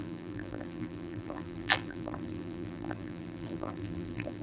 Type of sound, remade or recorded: remade